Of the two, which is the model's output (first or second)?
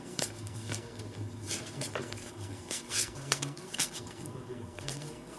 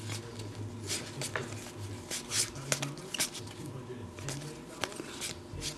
first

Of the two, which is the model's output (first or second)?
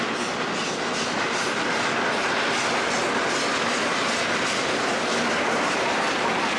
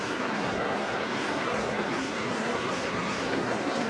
second